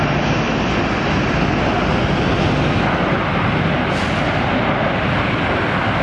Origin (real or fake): real